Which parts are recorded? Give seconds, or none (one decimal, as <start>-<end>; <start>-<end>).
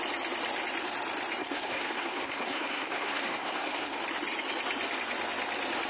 0.0-1.4; 4.0-5.9